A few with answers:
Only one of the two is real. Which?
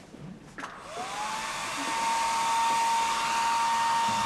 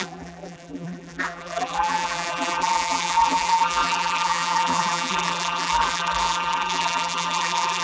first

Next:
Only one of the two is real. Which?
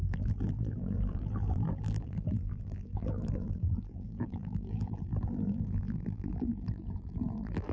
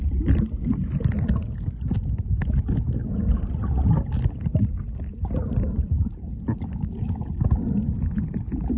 second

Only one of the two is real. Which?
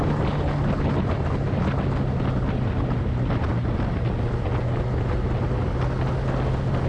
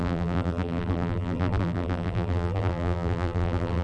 first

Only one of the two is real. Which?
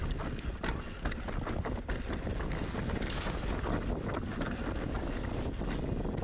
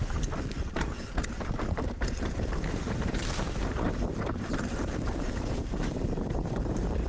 first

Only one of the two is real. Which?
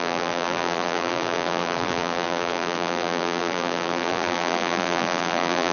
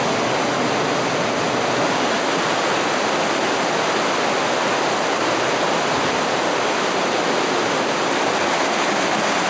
second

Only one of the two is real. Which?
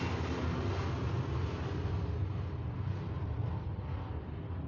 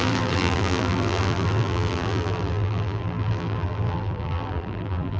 first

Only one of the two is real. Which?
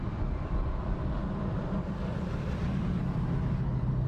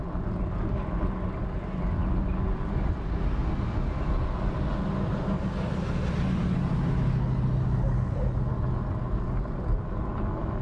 second